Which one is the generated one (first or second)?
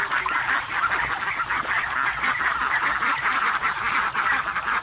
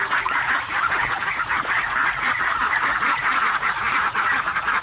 second